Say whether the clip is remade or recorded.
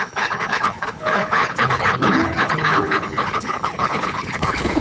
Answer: remade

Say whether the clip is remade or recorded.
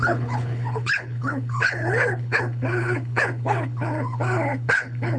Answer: remade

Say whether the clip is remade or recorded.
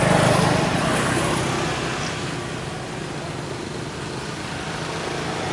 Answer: recorded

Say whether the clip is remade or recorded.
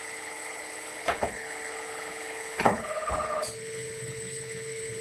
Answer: remade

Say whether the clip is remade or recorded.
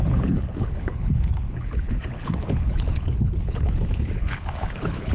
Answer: remade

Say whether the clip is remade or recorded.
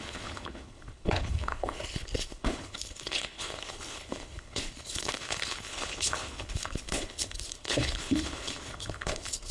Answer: remade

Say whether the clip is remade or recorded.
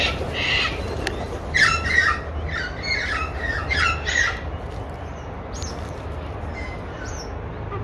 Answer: recorded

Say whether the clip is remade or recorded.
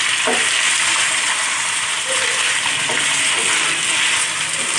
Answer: recorded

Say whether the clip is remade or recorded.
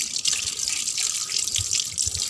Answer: recorded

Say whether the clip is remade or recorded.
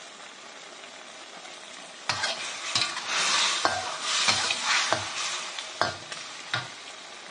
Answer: recorded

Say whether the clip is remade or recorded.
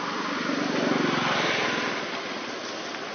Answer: recorded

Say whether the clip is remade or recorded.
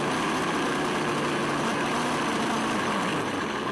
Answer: recorded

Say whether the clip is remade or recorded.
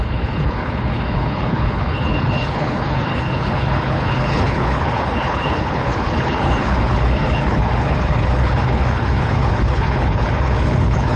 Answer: remade